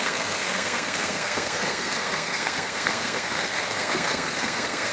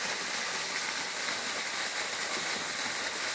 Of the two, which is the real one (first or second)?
second